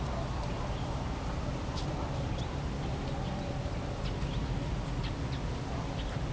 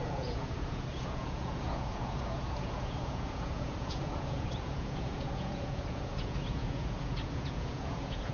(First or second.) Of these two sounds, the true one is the first